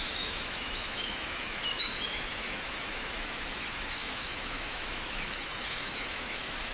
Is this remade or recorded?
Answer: remade